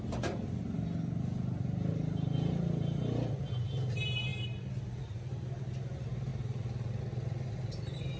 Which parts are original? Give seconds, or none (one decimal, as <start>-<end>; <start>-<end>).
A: 0.0-6.3; 7.0-8.2

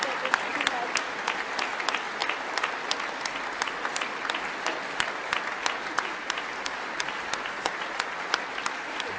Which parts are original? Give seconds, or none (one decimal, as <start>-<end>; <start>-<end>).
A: 0.0-0.5; 1.6-9.2

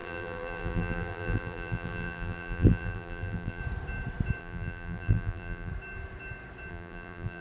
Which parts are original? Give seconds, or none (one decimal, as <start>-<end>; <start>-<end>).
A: 3.6-4.4; 5.7-6.7

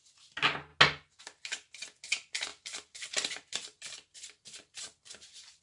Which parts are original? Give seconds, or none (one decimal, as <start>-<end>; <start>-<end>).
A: 0.0-2.5